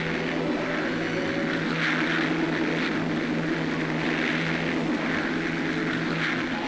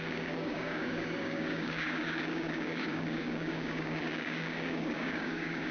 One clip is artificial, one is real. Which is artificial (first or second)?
second